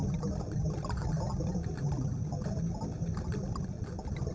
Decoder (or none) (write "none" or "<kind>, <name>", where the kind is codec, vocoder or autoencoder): none